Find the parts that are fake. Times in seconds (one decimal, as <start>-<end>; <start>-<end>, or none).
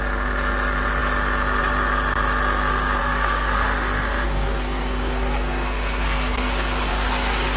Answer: 3.0-7.6